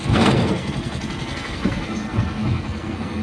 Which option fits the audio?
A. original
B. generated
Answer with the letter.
B